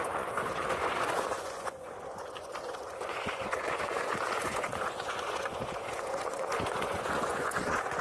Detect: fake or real fake